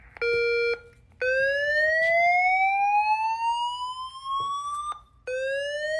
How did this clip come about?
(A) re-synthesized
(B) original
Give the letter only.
B